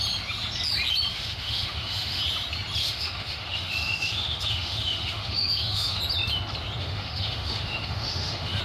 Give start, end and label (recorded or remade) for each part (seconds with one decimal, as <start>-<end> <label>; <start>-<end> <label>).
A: 0.0-1.1 recorded; 1.1-2.2 remade; 2.2-2.8 recorded; 2.8-6.0 remade; 6.0-6.8 recorded; 6.8-8.6 remade

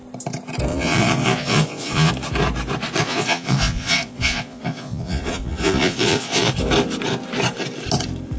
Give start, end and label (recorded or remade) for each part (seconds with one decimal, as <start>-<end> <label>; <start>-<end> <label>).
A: 0.0-0.7 recorded; 0.7-2.1 remade; 2.1-3.0 recorded; 3.0-6.5 remade; 6.5-8.4 recorded

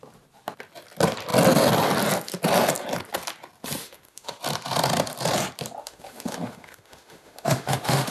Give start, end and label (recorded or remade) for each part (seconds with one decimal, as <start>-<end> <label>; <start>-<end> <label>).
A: 0.0-3.8 recorded; 3.8-4.4 remade; 4.4-5.8 recorded; 5.8-8.1 remade

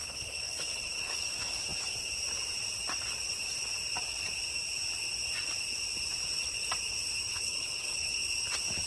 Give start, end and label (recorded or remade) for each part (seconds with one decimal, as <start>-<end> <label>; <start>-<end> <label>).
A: 0.0-1.2 remade; 1.2-7.3 recorded; 7.3-8.2 remade; 8.2-8.9 recorded

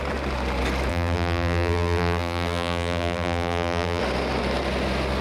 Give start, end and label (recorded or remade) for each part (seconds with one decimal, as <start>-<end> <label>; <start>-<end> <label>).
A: 0.0-0.9 recorded; 0.9-4.0 remade; 4.0-5.2 recorded

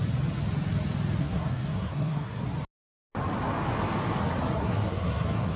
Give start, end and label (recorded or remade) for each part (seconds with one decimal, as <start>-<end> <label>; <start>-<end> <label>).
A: 0.0-1.2 recorded; 1.2-2.4 remade; 2.4-4.6 recorded; 4.6-5.6 remade